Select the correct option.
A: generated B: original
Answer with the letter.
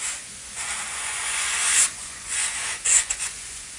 A